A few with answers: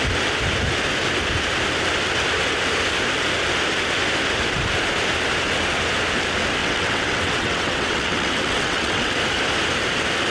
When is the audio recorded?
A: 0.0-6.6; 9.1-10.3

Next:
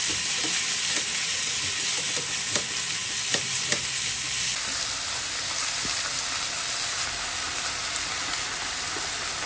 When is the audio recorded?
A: 0.0-1.1; 1.6-9.5

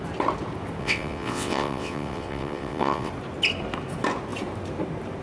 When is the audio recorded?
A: 0.0-0.8; 3.1-5.2

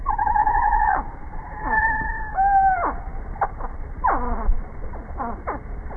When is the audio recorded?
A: 0.0-0.4; 1.0-6.0

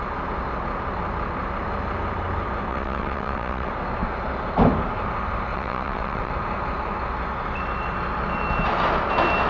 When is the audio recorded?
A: 0.0-2.7; 3.7-5.5; 6.3-9.5

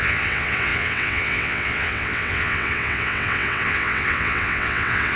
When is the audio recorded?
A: none

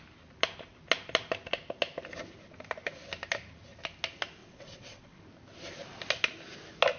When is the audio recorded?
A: 0.0-4.4; 5.2-7.0

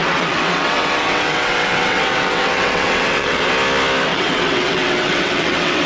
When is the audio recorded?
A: 3.5-4.1